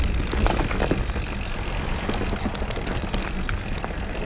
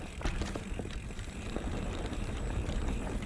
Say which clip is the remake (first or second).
second